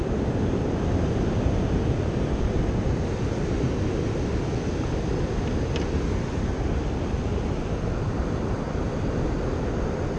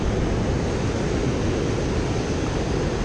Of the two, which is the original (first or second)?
second